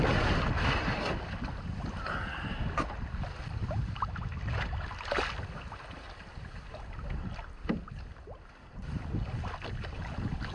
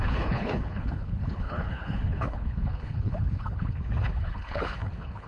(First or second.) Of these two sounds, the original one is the first